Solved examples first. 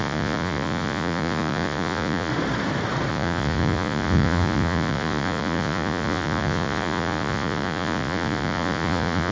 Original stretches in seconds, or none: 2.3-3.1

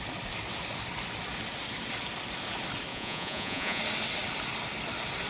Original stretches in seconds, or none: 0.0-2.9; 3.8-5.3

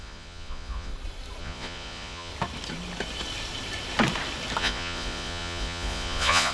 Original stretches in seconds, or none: 0.9-1.4; 2.3-4.6